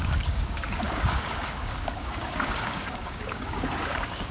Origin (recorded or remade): remade